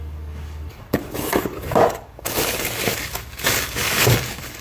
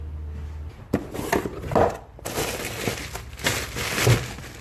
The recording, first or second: second